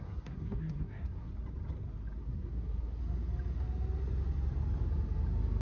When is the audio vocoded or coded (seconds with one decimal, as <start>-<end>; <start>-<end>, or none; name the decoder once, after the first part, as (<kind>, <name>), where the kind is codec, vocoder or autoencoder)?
0.0-1.3 (codec, SNAC); 2.2-3.0

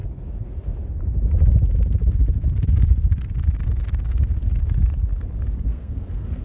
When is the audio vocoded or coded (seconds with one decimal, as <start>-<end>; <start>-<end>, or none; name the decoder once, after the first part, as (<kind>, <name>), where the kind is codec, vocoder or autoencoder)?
5.7-6.4 (codec, SNAC)

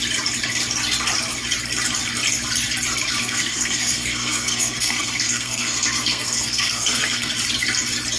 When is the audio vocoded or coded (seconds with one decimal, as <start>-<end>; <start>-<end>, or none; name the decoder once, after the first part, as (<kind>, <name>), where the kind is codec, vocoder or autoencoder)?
3.2-7.3 (codec, SNAC)

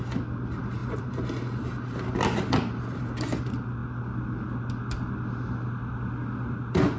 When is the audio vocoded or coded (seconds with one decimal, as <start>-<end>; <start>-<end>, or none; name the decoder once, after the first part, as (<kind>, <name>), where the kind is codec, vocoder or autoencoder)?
none